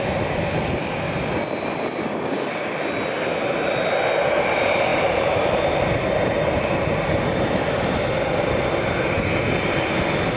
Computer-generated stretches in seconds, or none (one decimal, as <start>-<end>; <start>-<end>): none